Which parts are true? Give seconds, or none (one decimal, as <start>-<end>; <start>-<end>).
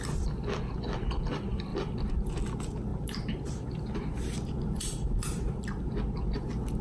0.0-1.7; 2.3-2.9; 6.0-6.8